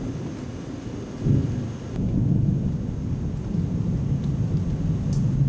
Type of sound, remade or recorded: recorded